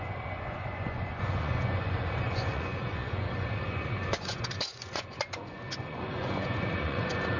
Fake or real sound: fake